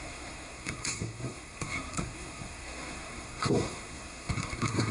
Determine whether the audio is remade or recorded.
remade